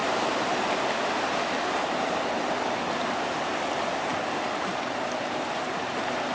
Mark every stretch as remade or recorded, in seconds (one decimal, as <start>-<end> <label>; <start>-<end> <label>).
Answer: 0.0-1.2 recorded; 1.2-6.3 remade